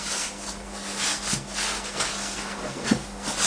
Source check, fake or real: fake